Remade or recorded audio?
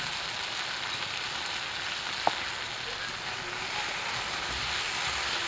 recorded